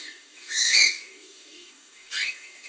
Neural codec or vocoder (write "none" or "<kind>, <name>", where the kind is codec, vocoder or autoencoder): codec, DAC